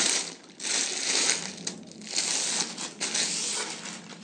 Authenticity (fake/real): real